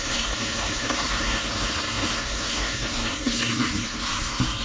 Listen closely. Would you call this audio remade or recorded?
remade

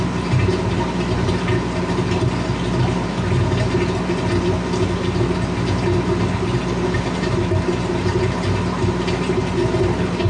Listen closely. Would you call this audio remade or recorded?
recorded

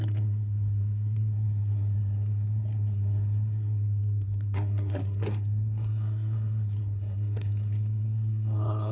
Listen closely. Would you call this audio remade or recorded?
remade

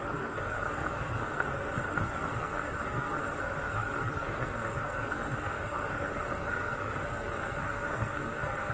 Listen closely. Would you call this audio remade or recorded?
remade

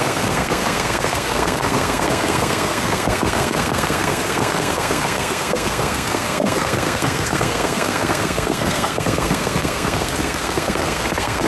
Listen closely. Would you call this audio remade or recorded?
remade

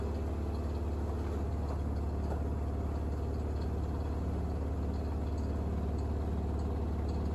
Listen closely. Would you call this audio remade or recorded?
recorded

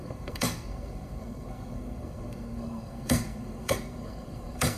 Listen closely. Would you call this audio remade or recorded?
remade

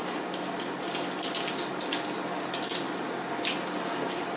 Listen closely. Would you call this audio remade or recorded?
recorded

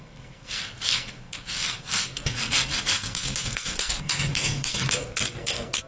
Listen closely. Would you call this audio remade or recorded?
remade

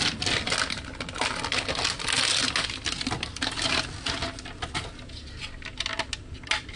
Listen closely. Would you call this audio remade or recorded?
recorded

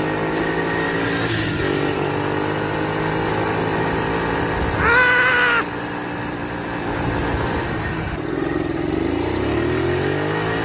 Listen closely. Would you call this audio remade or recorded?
recorded